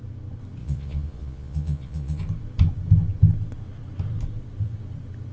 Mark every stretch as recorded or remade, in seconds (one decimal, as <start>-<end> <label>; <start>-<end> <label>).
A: 0.0-0.6 recorded; 0.6-2.2 remade; 2.2-5.3 recorded